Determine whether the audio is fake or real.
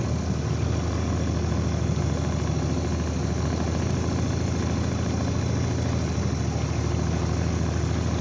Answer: real